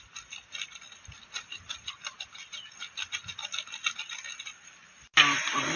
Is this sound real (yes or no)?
yes